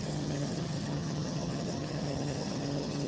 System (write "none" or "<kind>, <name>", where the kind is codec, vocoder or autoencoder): vocoder, HiFi-GAN